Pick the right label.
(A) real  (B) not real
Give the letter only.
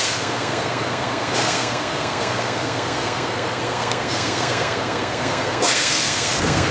B